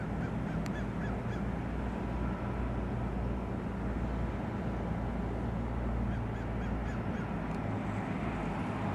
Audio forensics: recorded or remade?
recorded